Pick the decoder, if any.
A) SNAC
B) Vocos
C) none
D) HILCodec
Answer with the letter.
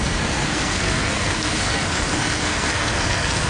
A